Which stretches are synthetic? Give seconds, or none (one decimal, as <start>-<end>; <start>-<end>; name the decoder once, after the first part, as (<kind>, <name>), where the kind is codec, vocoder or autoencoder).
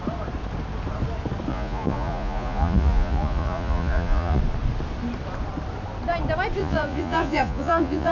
1.5-4.4 (vocoder, Vocos); 6.6-8.1